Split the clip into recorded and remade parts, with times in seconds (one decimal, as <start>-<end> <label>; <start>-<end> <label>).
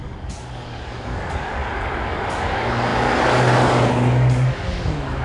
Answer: 0.0-5.2 remade